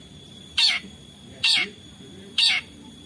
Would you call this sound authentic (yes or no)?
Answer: no